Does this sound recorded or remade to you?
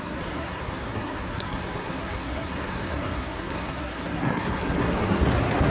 remade